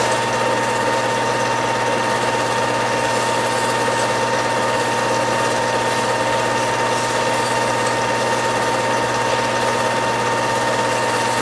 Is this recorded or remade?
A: recorded